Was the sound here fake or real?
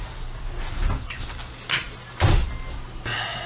real